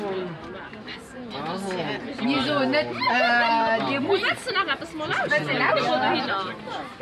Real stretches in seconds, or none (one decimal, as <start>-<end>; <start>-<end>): 0.0-7.0